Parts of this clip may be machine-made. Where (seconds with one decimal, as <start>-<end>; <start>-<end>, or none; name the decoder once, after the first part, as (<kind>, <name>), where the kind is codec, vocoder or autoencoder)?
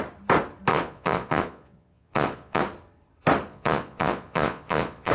0.7-2.6 (vocoder, Vocos); 3.5-5.1